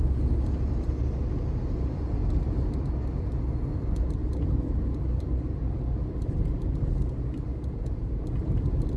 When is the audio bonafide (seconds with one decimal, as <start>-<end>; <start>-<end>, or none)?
0.0-7.5; 8.2-9.0